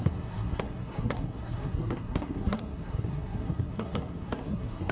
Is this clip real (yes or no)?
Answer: no